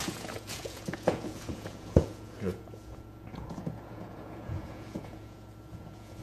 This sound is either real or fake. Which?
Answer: fake